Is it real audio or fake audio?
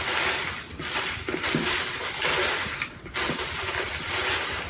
real